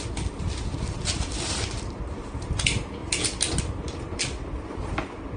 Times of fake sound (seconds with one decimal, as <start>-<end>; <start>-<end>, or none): none